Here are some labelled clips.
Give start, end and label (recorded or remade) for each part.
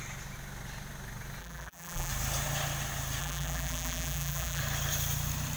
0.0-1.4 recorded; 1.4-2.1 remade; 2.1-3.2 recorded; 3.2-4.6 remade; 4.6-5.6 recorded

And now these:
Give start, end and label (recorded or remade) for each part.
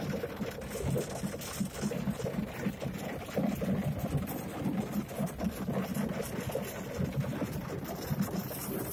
0.0-8.9 recorded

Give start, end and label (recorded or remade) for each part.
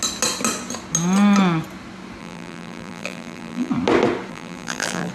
0.0-2.2 recorded; 2.2-3.7 remade; 3.7-4.3 recorded; 4.3-5.1 remade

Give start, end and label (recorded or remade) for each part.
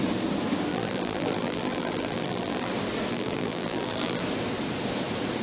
0.0-0.7 recorded; 0.7-2.7 remade; 2.7-3.1 recorded; 3.1-4.2 remade; 4.2-5.4 recorded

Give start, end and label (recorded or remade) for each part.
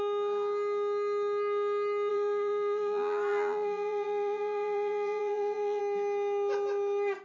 0.0-2.1 recorded; 2.1-5.8 remade; 5.8-7.2 recorded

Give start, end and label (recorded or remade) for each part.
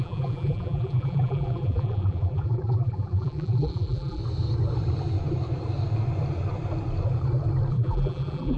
0.0-4.2 remade; 4.2-7.7 recorded; 7.7-8.6 remade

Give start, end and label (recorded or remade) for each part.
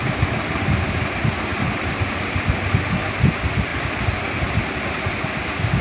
0.0-3.7 recorded; 3.7-4.6 remade; 4.6-5.8 recorded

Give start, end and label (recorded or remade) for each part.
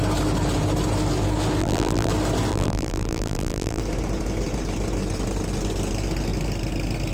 0.0-1.6 recorded; 1.6-2.1 remade; 2.1-2.5 recorded; 2.5-3.8 remade; 3.8-7.1 recorded